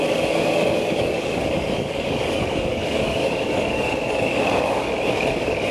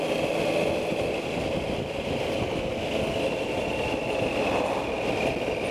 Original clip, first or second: second